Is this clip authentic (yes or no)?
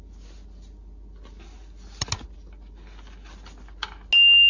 yes